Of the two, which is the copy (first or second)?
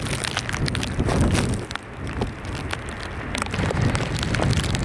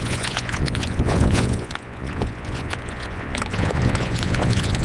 second